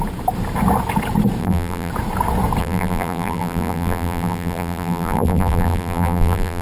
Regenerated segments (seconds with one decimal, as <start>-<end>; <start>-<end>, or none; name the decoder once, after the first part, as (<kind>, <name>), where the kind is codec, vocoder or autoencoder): 1.4-1.9 (vocoder, BigVGAN v2); 2.6-6.6